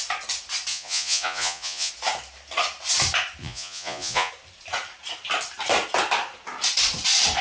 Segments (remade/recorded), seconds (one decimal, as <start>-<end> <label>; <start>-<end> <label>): 0.0-0.7 recorded; 0.7-1.9 remade; 1.9-3.4 recorded; 3.4-4.3 remade; 4.3-7.4 recorded